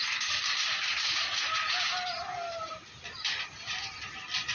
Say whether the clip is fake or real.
real